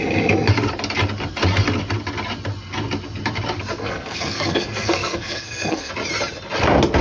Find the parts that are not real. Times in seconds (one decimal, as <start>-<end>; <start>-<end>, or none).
3.8-5.9

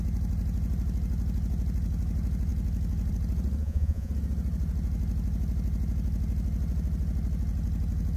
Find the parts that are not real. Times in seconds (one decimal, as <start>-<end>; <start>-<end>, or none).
3.6-4.1

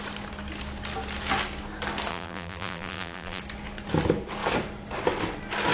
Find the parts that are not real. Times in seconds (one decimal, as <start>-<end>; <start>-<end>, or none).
2.1-3.4